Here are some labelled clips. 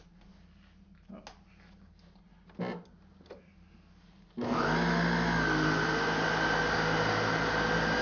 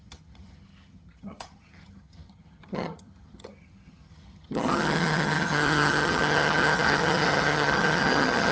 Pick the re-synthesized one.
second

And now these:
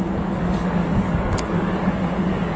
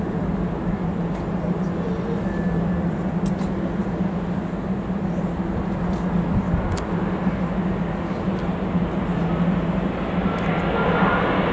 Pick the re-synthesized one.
first